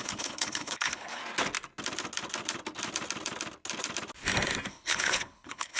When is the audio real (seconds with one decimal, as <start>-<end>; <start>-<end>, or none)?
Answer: 1.2-4.7